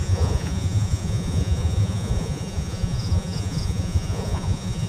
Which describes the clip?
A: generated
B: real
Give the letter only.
A